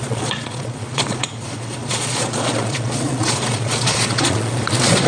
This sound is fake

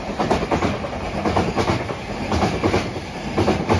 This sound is real